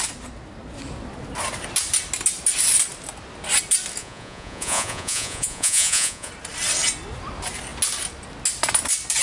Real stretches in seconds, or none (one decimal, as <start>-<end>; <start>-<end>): 0.0-4.0; 6.3-9.2